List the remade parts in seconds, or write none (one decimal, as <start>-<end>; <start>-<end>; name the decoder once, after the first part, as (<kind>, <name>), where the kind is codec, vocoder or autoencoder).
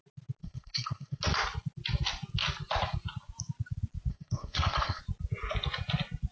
0.4-1.2 (codec, SNAC); 4.1-5.0